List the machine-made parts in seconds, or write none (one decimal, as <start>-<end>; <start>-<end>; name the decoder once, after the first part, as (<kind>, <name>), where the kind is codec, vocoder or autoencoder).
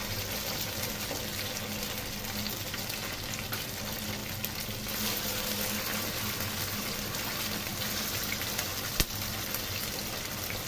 none